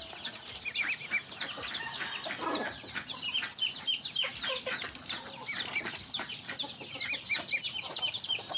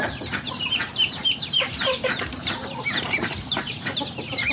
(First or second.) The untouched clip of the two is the first